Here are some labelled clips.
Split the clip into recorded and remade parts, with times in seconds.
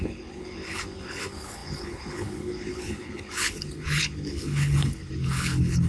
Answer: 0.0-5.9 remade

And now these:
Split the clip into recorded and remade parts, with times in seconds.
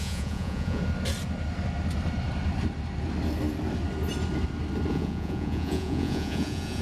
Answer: 0.0-0.8 remade; 0.8-4.9 recorded; 4.9-6.8 remade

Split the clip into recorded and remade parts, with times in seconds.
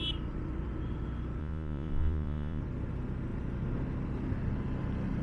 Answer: 0.0-1.4 recorded; 1.4-2.6 remade; 2.6-5.2 recorded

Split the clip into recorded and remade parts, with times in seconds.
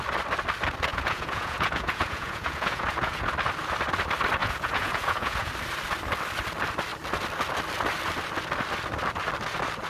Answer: 0.0-0.9 recorded; 0.9-3.3 remade; 3.3-4.4 recorded; 4.4-5.5 remade; 5.5-9.9 recorded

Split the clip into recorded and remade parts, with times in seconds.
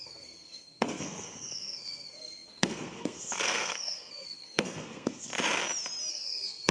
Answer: 0.0-5.3 remade; 5.3-6.1 recorded; 6.1-6.7 remade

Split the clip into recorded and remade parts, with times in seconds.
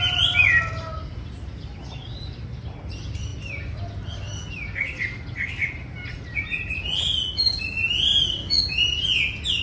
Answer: 0.0-9.6 recorded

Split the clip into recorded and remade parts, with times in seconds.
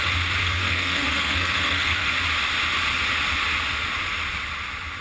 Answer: 0.0-0.4 recorded; 0.4-2.1 remade; 2.1-5.0 recorded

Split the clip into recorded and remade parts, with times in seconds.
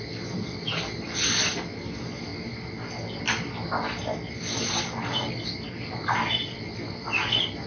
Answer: 0.0-7.7 recorded